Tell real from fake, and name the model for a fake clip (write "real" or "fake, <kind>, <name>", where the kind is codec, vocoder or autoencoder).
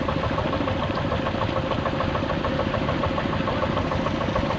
real